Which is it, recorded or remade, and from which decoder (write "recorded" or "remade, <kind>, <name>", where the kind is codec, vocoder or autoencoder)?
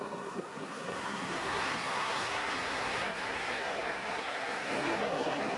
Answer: remade, codec, SNAC